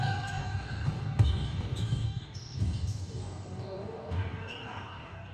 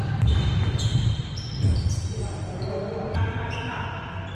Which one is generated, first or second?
first